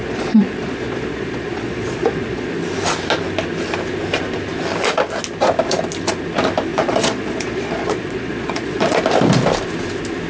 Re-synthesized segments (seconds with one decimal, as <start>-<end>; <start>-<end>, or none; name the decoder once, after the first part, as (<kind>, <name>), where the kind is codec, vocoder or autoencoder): 0.0-2.5 (vocoder, Vocos); 6.7-9.0